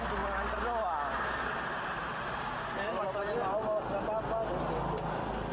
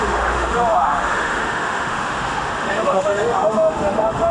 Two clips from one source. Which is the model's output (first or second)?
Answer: second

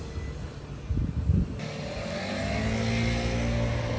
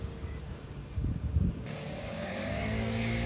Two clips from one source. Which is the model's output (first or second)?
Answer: second